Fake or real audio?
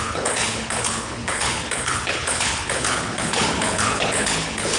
fake